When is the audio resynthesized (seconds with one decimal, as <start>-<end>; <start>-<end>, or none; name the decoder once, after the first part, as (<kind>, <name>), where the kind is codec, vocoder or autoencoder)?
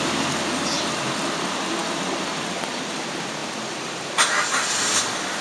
none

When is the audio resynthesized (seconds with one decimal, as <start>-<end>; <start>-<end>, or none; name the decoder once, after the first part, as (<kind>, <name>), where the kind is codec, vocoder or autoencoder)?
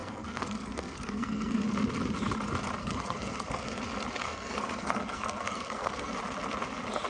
0.0-1.6 (codec, SNAC); 2.8-3.8; 4.2-6.1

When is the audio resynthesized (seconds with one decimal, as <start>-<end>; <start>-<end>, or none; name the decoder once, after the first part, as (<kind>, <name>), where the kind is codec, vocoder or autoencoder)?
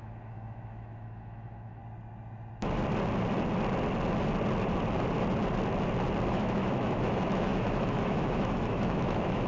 0.0-1.8 (autoencoder, DAC-VAE); 6.3-9.5